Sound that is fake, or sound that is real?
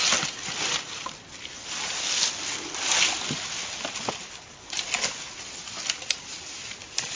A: real